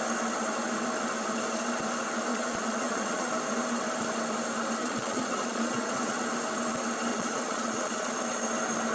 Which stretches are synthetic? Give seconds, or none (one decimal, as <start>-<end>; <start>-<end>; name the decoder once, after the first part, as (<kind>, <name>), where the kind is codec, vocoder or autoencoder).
2.3-3.3 (vocoder, Vocos); 4.8-6.2; 7.1-8.1